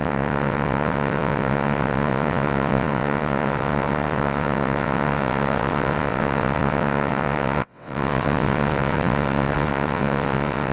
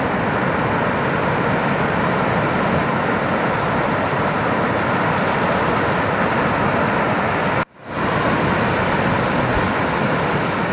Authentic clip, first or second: second